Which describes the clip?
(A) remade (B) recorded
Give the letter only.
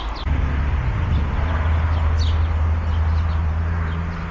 B